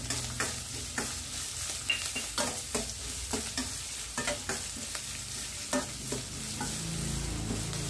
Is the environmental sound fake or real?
real